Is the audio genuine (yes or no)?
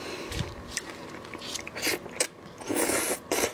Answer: yes